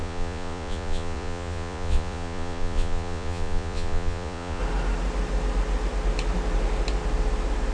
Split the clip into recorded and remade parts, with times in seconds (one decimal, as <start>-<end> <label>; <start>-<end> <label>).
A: 0.0-4.6 remade; 4.6-7.7 recorded

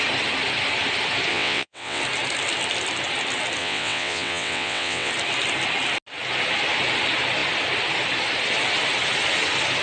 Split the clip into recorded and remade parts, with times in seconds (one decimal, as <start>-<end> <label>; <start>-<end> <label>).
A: 0.0-1.3 recorded; 1.3-2.0 remade; 2.0-3.6 recorded; 3.6-5.1 remade; 5.1-9.8 recorded

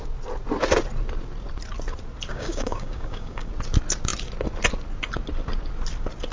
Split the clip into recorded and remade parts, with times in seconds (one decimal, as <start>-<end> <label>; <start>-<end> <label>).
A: 0.0-2.3 recorded; 2.3-3.5 remade; 3.5-6.3 recorded

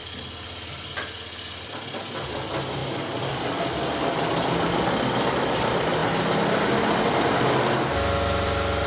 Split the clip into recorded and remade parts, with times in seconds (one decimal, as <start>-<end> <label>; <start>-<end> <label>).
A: 0.0-8.9 recorded

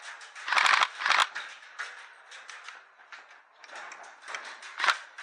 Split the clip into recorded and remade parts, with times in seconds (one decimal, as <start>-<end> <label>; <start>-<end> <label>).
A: 0.0-5.2 recorded

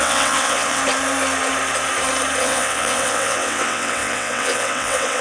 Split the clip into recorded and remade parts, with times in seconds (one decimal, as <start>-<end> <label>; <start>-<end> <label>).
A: 0.0-0.8 remade; 0.8-2.4 recorded; 2.4-5.2 remade

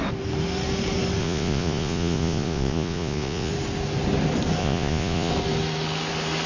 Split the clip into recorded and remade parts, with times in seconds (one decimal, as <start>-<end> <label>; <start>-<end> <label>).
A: 0.0-1.2 recorded; 1.2-3.5 remade; 3.5-4.6 recorded; 4.6-5.3 remade; 5.3-6.5 recorded